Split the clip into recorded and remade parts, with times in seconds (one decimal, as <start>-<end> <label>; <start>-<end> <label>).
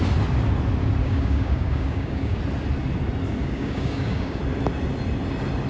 0.0-1.0 recorded; 1.0-2.4 remade; 2.4-3.4 recorded; 3.4-4.4 remade; 4.4-5.7 recorded